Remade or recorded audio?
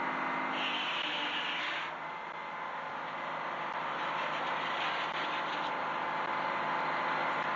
recorded